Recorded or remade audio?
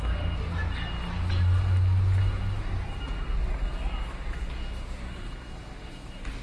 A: recorded